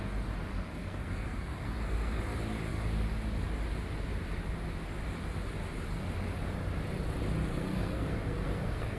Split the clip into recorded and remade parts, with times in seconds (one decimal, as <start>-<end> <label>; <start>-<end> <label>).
0.0-0.5 recorded; 0.5-2.2 remade; 2.2-7.5 recorded; 7.5-9.0 remade